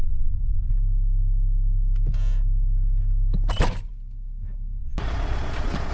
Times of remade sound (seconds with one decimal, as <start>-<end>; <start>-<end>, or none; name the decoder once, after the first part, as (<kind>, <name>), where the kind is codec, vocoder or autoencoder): 0.0-0.7 (vocoder, Vocos); 4.8-5.9